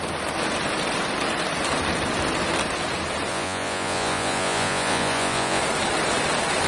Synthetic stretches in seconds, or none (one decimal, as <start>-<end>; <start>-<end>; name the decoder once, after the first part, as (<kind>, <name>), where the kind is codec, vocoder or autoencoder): 3.3-5.6 (vocoder, Vocos)